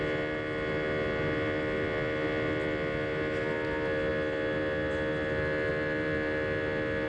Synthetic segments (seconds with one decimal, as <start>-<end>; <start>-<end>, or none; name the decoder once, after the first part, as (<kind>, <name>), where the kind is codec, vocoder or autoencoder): none